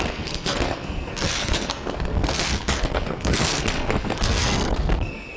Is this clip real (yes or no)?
no